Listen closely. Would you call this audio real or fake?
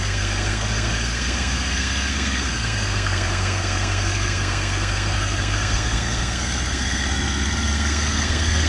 fake